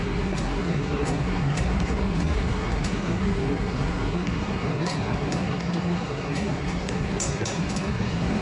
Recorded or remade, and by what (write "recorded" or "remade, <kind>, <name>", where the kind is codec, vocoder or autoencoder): remade, codec, SNAC